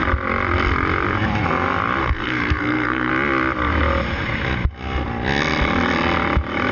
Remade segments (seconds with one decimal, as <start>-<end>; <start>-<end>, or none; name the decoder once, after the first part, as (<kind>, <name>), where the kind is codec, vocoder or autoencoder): 2.0-3.1 (codec, SNAC)

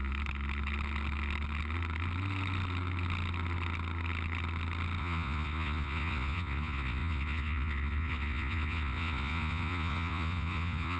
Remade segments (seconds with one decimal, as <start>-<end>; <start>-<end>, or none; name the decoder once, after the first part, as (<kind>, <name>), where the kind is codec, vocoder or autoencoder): 5.0-11.0 (vocoder, Vocos)

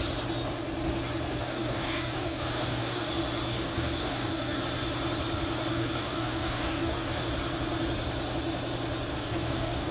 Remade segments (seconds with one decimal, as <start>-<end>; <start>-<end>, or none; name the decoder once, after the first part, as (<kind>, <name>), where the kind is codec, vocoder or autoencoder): 1.3-3.1 (codec, DAC); 3.5-4.6; 5.7-7.3; 9.1-9.9

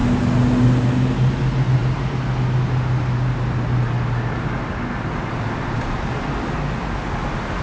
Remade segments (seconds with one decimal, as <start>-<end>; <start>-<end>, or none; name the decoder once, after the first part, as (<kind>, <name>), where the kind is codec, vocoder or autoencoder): none

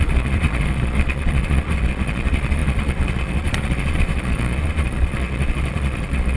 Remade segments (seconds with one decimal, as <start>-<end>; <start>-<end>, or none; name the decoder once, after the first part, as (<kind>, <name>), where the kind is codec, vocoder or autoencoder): 0.0-6.4 (vocoder, Vocos)

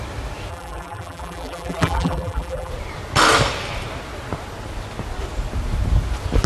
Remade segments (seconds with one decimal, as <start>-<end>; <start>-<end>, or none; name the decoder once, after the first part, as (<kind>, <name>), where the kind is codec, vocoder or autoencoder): 0.5-2.7 (vocoder, BigVGAN v2)

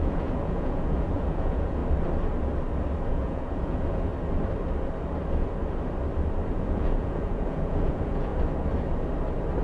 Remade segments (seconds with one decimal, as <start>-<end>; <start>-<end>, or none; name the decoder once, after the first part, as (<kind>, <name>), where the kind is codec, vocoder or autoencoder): 0.0-1.8 (vocoder, Vocos); 3.1-4.1; 6.5-8.3